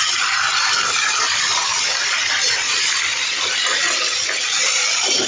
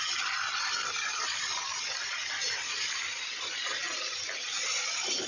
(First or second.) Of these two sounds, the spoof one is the first